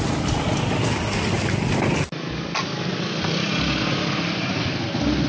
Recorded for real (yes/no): yes